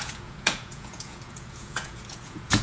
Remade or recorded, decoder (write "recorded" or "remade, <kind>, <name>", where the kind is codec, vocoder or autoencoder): remade, vocoder, Vocos